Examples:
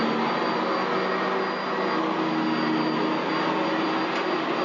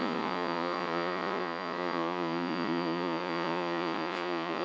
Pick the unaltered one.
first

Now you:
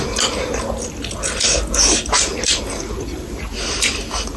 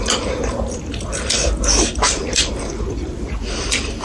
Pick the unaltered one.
first